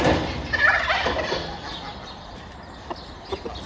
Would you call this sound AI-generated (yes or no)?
no